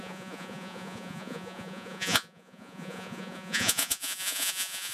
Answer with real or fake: fake